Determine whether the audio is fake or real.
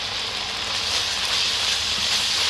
real